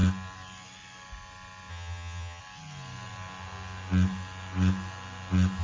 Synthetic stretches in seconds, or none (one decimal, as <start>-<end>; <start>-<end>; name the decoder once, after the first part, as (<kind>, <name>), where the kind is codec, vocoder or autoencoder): 1.7-2.4 (vocoder, HiFi-GAN)